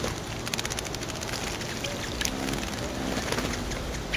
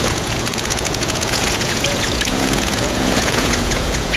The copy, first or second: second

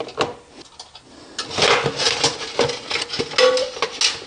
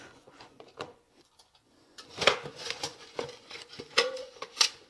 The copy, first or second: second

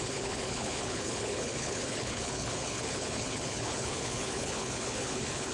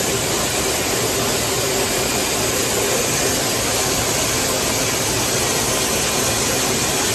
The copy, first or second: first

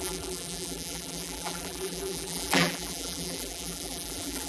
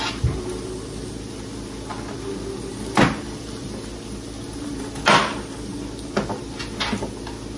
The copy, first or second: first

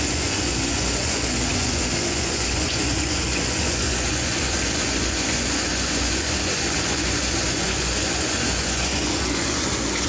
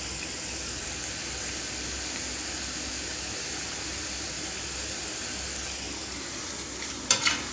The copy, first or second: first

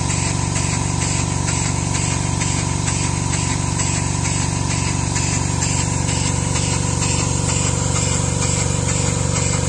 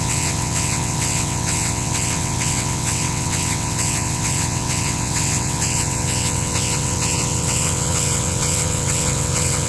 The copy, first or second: second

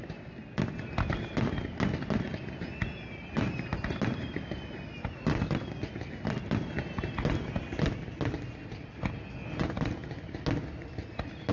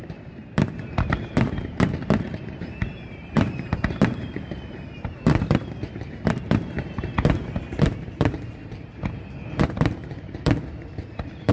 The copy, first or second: second